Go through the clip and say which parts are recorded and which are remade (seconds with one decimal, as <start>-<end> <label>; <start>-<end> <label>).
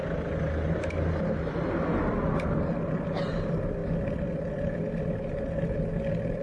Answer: 0.0-6.4 recorded